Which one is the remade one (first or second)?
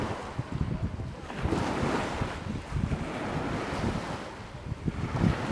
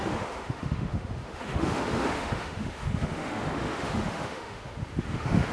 second